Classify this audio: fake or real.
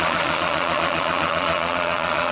fake